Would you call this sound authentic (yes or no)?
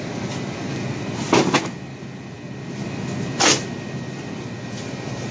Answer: yes